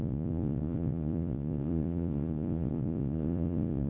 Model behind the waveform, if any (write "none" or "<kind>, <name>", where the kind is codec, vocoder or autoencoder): vocoder, Vocos